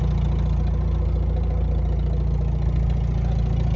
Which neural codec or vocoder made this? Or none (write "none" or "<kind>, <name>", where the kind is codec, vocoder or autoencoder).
none